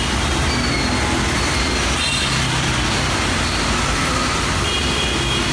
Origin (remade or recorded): recorded